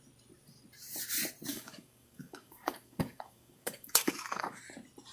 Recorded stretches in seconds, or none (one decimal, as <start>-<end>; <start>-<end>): 0.0-1.5; 4.6-5.1